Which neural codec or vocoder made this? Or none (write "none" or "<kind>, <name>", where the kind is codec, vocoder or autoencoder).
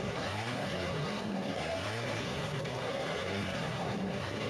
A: codec, SNAC